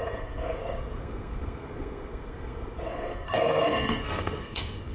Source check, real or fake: fake